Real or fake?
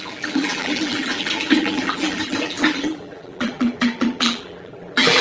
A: fake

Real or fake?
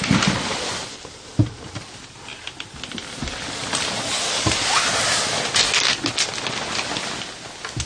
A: real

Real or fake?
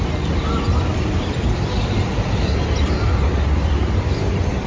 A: fake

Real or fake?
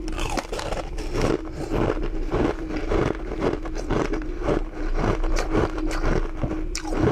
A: fake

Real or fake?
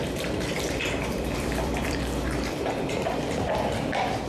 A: fake